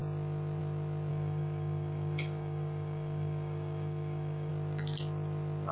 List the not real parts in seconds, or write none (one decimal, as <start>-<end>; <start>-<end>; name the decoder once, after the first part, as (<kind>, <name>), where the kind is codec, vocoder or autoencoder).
1.1-4.5 (codec, DAC)